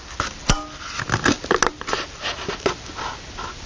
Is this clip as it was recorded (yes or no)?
yes